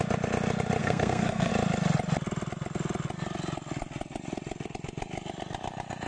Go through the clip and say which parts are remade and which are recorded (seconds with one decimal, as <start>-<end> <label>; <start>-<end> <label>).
0.0-0.8 recorded; 0.8-1.5 remade; 1.5-6.1 recorded